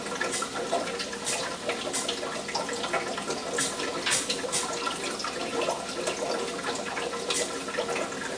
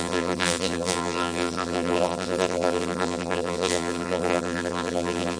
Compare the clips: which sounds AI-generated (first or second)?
second